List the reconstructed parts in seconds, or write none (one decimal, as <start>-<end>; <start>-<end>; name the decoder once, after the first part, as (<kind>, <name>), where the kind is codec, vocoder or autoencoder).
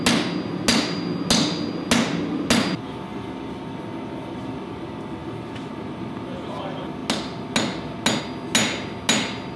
none